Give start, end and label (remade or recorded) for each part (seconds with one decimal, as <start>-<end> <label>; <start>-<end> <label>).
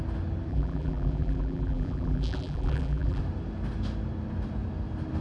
0.0-0.5 recorded; 0.5-3.2 remade; 3.2-5.2 recorded